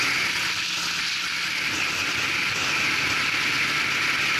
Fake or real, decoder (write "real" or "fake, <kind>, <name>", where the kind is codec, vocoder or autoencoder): real